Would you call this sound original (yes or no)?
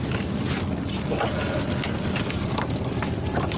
yes